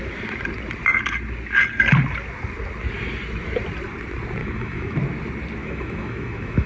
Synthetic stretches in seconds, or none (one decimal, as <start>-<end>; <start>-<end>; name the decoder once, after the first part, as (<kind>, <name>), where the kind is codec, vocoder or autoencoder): 4.4-5.0 (autoencoder, DAC-VAE); 5.6-6.7